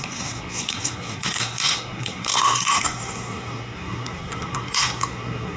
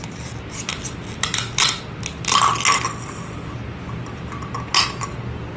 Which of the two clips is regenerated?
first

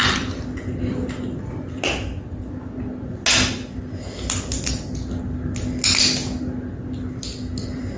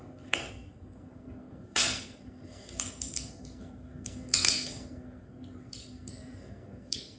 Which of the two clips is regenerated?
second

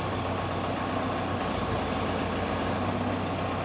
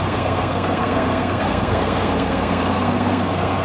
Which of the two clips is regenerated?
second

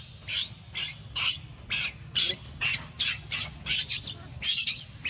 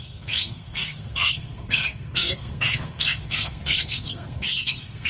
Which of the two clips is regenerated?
second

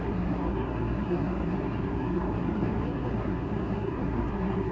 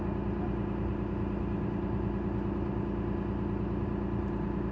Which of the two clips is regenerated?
first